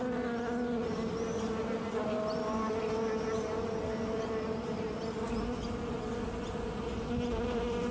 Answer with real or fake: real